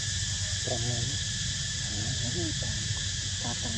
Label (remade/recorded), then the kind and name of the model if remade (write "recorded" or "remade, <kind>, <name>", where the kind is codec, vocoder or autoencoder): recorded